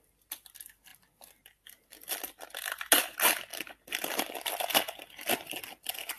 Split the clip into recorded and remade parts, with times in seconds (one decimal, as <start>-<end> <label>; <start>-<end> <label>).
0.0-0.9 recorded; 0.9-2.2 remade; 2.2-3.5 recorded; 3.5-5.1 remade; 5.1-6.2 recorded